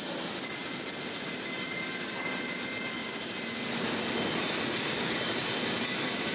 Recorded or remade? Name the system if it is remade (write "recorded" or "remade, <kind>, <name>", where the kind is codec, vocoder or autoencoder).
recorded